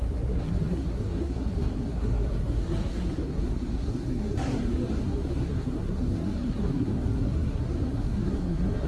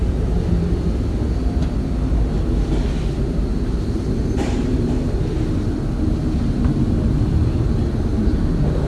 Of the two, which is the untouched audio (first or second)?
second